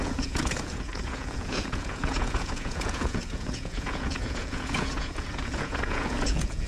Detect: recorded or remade remade